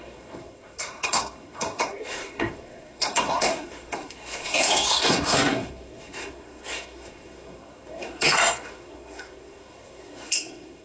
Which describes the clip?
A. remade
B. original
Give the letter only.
A